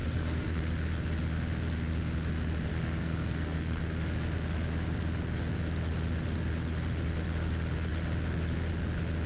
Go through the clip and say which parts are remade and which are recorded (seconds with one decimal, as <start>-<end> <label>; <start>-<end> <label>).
0.0-0.6 remade; 0.6-2.7 recorded; 2.7-3.8 remade; 3.8-9.3 recorded